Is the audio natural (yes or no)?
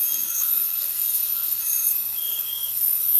no